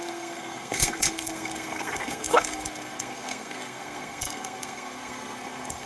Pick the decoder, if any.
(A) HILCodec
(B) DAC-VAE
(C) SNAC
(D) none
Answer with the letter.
C